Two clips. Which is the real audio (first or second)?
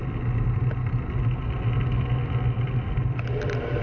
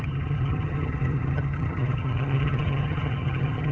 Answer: first